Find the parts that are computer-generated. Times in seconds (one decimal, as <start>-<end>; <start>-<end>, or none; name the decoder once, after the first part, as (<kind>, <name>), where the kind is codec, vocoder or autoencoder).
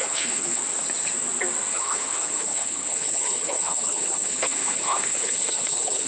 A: 0.0-0.6 (codec, HILCodec); 1.7-6.1